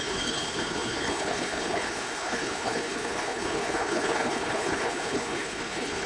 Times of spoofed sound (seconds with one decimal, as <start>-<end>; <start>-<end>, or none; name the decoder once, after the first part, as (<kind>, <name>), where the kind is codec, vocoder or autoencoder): 0.0-6.1 (codec, HILCodec)